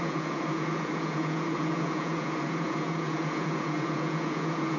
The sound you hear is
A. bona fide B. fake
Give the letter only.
B